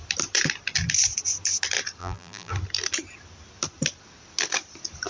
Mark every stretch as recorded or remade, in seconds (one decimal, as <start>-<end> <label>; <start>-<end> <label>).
0.0-2.0 recorded; 2.0-2.5 remade; 2.5-5.1 recorded